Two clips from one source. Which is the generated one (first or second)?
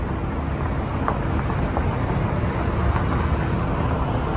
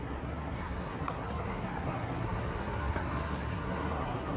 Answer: second